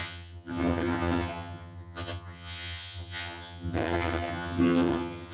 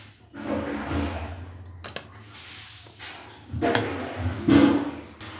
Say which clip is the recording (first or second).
second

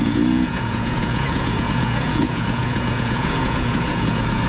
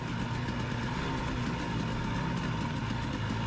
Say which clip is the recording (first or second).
second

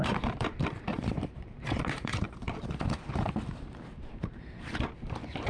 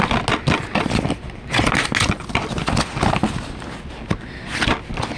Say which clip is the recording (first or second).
second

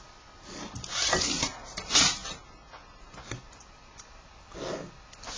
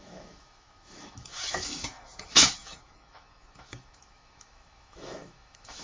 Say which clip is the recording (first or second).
first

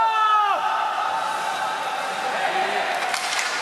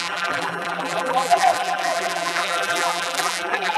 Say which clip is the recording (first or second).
first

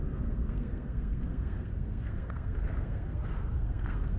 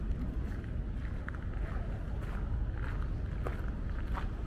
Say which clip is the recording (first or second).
second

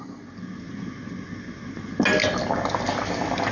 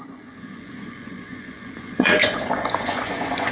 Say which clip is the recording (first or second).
first